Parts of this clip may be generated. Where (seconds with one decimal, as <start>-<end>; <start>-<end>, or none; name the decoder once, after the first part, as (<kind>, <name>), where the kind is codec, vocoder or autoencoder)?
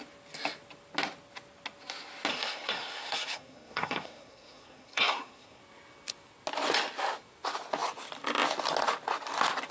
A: 2.3-5.6 (codec, SNAC)